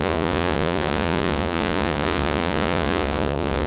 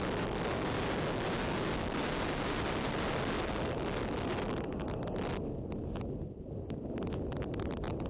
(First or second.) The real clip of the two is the second